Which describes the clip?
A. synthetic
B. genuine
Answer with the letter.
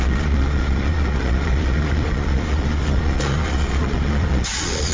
A